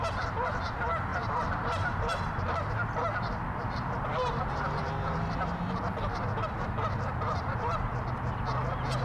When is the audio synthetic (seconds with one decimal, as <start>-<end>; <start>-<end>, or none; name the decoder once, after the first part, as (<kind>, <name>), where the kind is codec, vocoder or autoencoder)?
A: none